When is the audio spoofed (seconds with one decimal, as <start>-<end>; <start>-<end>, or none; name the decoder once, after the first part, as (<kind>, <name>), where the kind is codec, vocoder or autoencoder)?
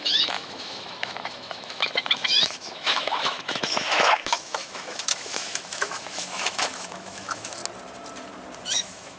0.0-7.6 (autoencoder, DAC-VAE); 8.6-9.2